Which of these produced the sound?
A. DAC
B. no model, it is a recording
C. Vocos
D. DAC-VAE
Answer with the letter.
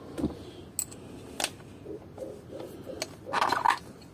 B